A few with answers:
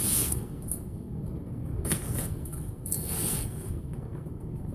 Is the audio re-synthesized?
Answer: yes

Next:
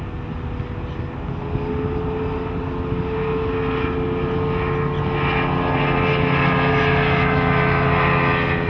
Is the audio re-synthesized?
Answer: no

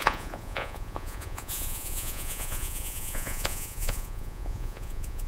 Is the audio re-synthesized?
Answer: yes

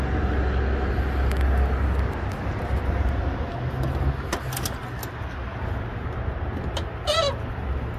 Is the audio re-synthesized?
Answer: no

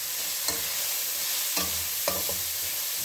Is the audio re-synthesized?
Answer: no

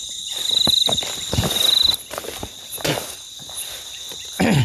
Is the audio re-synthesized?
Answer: no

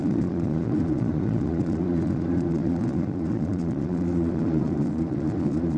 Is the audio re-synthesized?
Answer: yes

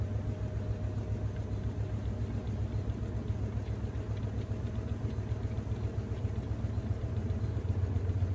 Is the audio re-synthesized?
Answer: no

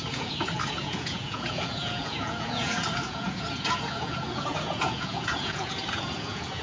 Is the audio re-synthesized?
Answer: yes